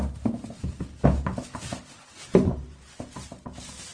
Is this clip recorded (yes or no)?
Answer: yes